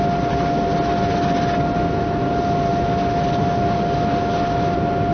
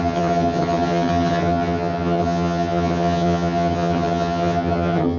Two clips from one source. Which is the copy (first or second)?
second